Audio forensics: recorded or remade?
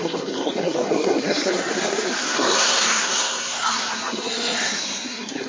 remade